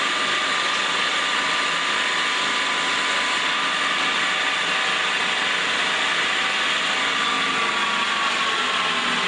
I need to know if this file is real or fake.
real